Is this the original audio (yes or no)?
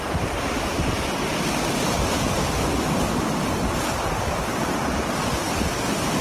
yes